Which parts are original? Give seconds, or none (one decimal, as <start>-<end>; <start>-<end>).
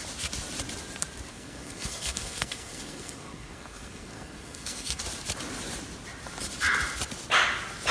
0.0-1.3; 5.0-7.9